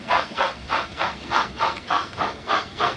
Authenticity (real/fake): fake